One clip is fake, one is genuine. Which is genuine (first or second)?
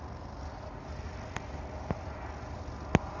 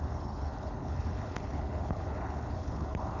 first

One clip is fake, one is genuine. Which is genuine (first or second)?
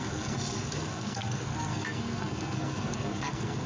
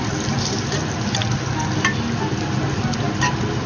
second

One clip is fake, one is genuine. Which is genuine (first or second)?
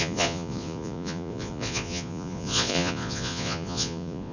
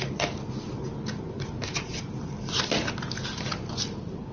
second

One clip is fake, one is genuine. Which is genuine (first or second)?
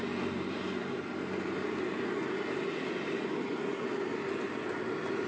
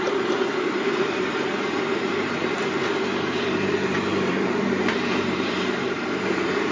first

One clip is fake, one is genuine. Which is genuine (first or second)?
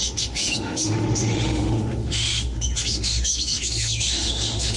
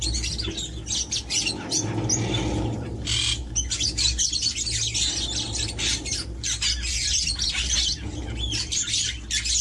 second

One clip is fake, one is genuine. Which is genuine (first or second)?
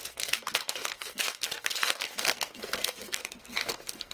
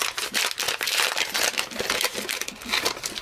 second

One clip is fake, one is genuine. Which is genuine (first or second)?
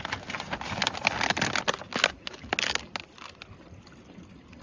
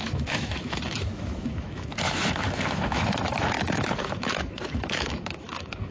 first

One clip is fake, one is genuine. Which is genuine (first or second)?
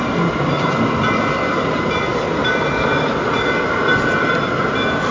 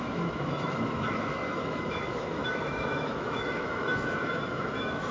first